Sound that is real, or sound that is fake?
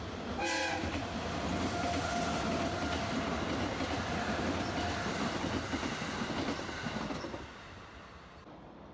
real